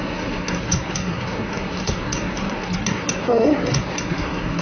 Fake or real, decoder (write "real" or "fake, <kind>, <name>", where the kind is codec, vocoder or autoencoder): fake, codec, SNAC